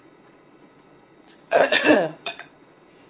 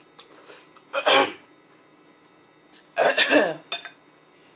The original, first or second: second